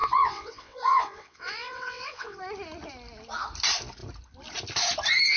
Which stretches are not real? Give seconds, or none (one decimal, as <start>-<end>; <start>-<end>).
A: 0.0-2.4